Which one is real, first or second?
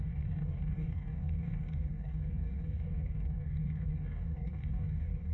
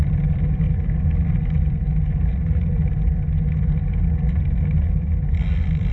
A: second